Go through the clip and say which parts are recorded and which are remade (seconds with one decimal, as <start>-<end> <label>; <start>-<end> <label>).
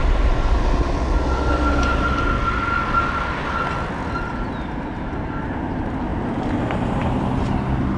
0.0-8.0 recorded